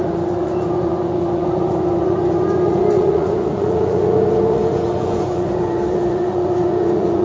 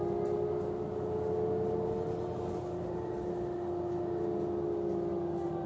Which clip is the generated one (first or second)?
first